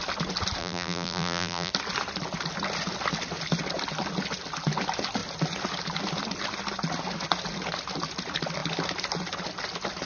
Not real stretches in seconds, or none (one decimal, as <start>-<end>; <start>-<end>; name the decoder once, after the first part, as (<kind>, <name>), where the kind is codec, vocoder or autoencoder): 0.6-1.7 (vocoder, BigVGAN v2)